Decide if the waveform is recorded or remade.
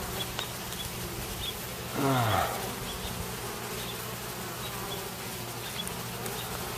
recorded